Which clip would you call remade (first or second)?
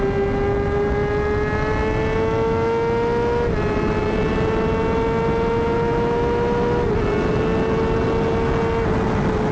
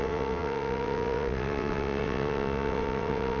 second